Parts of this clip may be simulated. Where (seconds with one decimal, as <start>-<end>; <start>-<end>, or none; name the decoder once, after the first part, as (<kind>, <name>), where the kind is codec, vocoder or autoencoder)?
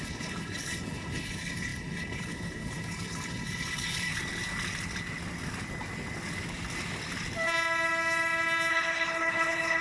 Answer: 0.0-4.1 (codec, HILCodec); 8.7-9.8